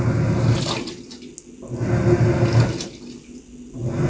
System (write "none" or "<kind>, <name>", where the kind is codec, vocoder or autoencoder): none